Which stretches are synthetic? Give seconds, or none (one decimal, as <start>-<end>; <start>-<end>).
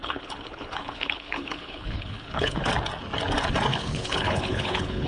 0.0-2.7; 3.7-5.1